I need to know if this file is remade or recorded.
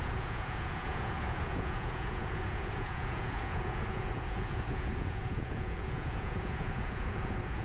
remade